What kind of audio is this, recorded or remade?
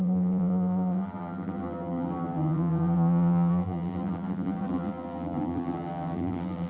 remade